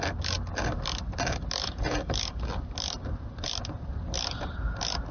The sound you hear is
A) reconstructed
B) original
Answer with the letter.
B